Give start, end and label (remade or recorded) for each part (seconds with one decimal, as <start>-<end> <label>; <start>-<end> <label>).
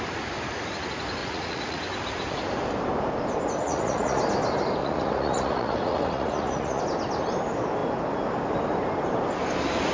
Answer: 0.0-1.2 recorded; 1.2-1.8 remade; 1.8-3.6 recorded; 3.6-4.2 remade; 4.2-4.8 recorded; 4.8-6.8 remade; 6.8-9.9 recorded